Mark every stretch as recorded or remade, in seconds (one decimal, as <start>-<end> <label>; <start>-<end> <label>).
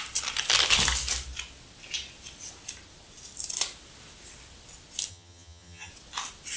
0.0-5.1 recorded; 5.1-5.9 remade; 5.9-6.6 recorded